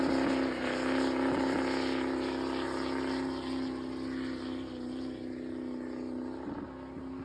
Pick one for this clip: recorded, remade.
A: recorded